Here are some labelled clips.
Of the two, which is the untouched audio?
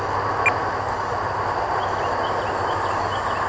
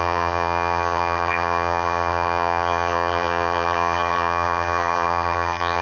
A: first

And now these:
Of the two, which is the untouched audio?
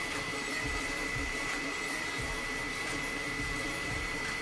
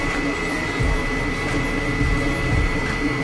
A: second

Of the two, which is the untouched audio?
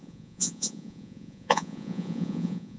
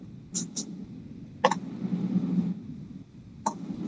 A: second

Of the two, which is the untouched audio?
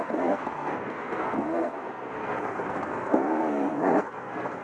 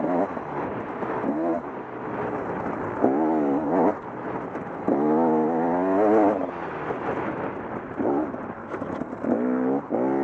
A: second